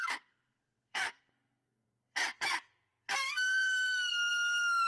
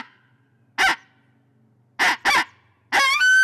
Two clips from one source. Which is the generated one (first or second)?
first